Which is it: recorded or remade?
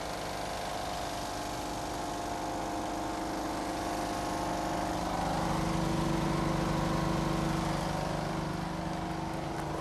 recorded